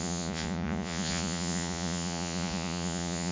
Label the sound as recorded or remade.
remade